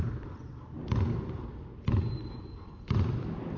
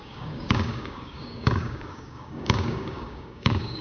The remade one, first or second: second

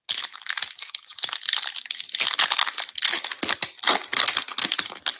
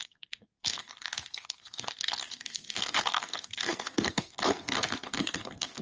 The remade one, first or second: second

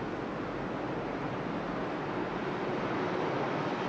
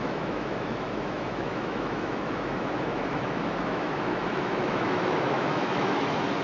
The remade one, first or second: second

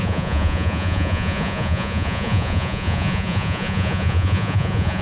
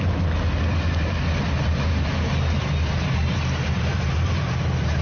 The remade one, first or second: first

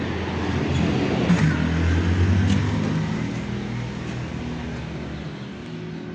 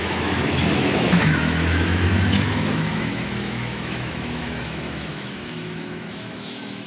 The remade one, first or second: second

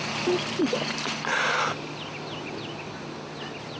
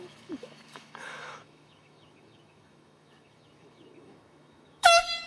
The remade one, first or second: second